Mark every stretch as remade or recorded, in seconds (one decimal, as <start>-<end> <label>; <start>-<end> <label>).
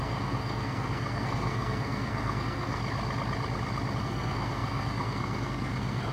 0.0-2.8 remade; 2.8-4.0 recorded; 4.0-6.1 remade